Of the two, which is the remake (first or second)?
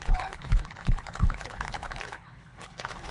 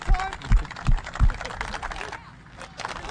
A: first